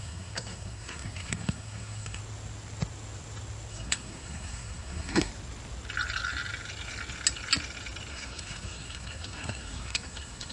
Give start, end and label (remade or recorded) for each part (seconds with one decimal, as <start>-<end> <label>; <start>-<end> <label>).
0.0-2.2 remade; 2.2-3.7 recorded; 3.7-5.3 remade; 5.3-8.1 recorded; 8.1-10.5 remade